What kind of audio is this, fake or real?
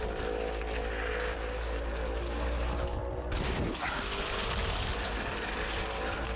real